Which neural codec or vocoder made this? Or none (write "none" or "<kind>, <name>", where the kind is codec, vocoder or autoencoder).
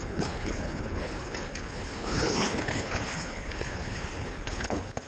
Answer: codec, HILCodec